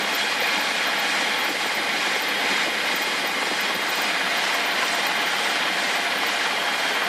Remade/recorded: recorded